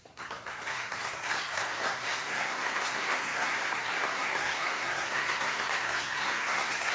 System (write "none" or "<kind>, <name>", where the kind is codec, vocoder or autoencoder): codec, SNAC